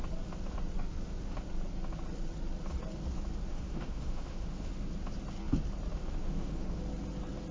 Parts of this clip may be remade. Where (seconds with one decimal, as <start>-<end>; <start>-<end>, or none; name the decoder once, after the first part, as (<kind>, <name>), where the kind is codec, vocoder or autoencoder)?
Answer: 3.5-4.7 (autoencoder, DAC-VAE); 6.2-6.8